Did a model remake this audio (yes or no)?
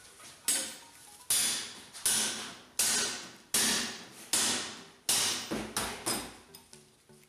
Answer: no